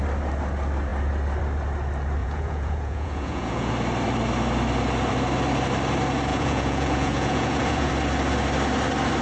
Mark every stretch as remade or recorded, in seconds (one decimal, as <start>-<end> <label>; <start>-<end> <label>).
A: 0.0-2.2 recorded; 2.2-3.7 remade; 3.7-6.3 recorded; 6.3-7.9 remade; 7.9-9.2 recorded